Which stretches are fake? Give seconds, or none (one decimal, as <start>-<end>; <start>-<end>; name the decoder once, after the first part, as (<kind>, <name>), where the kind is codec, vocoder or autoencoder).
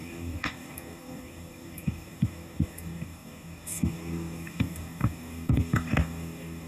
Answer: 0.0-6.7 (codec, DAC)